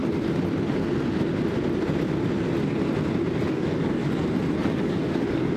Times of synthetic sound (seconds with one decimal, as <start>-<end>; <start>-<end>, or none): 3.4-4.0; 4.6-5.6